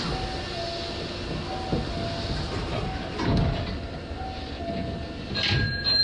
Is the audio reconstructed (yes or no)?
no